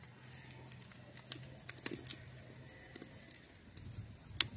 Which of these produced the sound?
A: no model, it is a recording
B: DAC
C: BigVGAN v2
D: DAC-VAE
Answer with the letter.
A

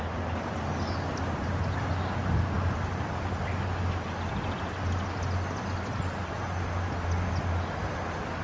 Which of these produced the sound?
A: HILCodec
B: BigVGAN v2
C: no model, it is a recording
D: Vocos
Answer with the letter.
C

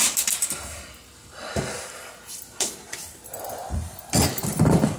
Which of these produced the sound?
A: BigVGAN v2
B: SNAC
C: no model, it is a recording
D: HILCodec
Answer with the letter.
C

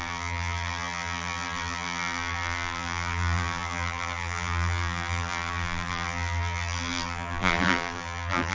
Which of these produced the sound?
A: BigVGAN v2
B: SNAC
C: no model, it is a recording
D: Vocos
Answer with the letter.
A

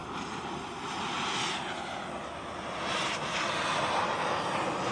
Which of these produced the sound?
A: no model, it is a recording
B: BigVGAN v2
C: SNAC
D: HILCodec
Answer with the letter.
A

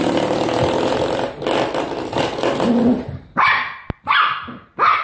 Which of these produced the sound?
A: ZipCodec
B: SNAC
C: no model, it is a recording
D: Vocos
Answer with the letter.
C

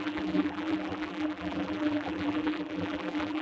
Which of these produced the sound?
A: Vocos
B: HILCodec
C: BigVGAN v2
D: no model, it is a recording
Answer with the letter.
C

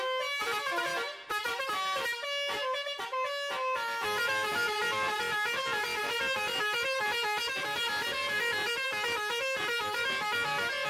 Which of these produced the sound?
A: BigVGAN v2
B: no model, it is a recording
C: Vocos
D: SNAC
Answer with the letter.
B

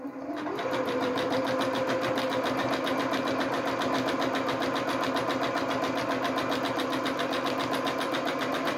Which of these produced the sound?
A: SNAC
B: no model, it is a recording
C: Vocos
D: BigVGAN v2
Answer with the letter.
B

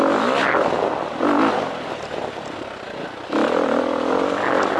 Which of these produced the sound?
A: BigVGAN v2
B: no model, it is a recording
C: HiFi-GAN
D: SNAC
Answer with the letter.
B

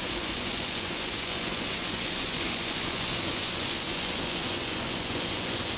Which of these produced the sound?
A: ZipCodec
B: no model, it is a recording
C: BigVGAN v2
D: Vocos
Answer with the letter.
D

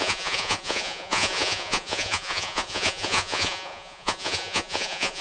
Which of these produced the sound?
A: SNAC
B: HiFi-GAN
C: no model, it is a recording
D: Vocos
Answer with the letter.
D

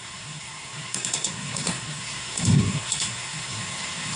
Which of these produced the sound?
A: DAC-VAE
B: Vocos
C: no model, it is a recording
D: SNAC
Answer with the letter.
D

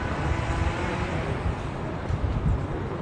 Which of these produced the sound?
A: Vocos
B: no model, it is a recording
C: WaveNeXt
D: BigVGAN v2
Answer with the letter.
B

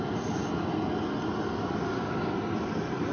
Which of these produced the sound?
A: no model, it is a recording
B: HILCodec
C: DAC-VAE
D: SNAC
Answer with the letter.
A